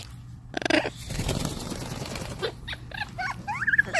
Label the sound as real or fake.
fake